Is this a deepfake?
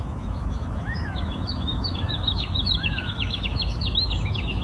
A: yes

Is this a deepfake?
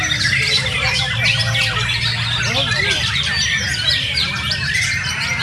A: no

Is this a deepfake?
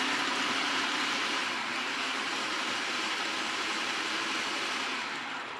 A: yes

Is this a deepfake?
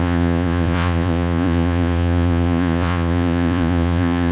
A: yes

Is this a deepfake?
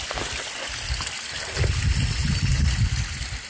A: no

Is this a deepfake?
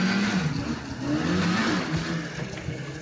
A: no